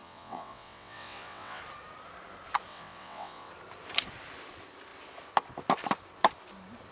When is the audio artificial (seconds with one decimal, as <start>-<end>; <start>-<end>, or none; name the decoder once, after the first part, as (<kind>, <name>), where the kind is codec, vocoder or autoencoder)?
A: 0.0-1.6 (vocoder, WaveNeXt); 2.7-3.5